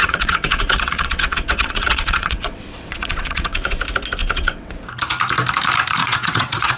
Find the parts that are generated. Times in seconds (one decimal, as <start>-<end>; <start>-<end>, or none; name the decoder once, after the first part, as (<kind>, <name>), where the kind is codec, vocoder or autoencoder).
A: 0.0-3.8 (vocoder, WaveNeXt); 4.2-4.7; 6.0-6.8